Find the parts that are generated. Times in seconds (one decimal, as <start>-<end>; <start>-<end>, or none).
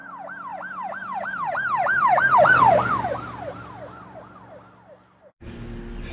0.5-4.2